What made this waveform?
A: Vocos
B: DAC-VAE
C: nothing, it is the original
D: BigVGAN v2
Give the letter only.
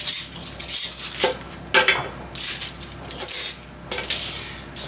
C